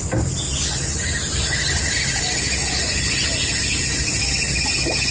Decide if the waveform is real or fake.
real